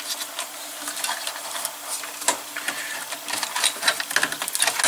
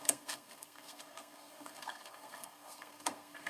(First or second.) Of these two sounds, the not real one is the second